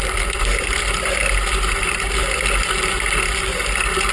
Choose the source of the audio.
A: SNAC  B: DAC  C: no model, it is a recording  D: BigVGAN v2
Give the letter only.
C